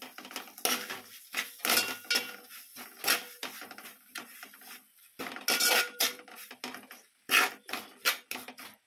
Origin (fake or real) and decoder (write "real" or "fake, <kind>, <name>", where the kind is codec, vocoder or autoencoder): real